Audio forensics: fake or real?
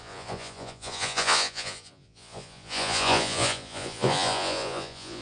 fake